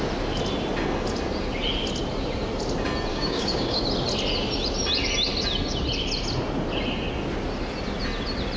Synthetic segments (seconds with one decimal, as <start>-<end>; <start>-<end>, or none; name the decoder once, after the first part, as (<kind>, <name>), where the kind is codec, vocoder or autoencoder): 3.1-3.8 (codec, DAC)